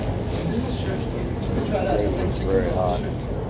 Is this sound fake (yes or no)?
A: no